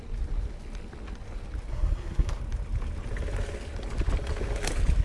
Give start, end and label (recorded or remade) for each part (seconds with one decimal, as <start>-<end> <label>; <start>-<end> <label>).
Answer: 0.0-1.7 recorded; 1.7-2.4 remade; 2.4-5.0 recorded